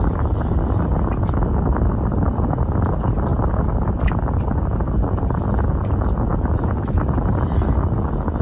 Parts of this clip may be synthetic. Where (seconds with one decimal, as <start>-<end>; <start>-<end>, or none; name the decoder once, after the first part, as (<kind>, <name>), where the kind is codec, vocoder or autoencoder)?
none